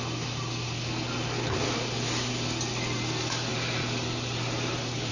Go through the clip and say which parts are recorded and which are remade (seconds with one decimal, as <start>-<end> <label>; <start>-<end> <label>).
0.0-5.1 recorded